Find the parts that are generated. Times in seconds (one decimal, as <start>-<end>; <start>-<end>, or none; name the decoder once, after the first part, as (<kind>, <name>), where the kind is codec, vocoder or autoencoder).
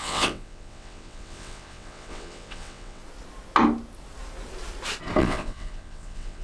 0.0-3.0 (vocoder, WaveNeXt); 5.2-6.4